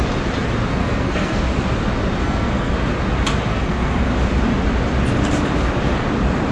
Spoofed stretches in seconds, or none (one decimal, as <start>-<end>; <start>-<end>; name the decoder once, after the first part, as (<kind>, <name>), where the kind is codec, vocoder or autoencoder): 0.8-1.4 (codec, SNAC); 2.2-2.7; 3.5-4.1